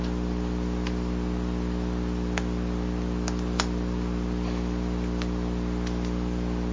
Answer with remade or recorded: recorded